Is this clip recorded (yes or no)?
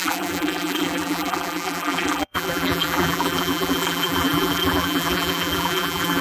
no